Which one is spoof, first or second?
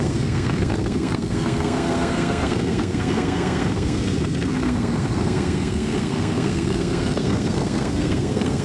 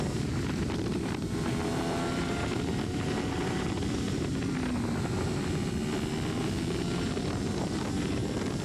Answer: first